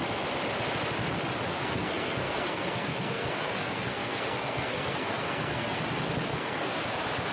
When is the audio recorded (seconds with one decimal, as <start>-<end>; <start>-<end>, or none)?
0.0-1.5; 5.8-6.3; 6.8-7.3